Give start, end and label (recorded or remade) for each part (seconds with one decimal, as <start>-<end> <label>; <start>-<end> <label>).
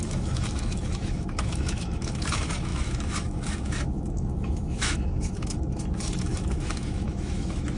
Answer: 0.0-7.8 remade